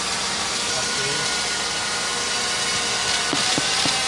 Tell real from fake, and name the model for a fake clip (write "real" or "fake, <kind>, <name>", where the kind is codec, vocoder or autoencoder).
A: real